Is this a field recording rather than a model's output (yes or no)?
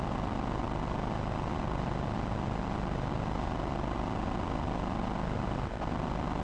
yes